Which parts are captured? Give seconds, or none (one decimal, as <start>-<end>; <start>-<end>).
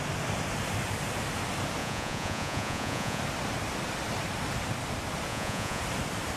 0.0-1.8; 3.2-5.3; 5.8-6.4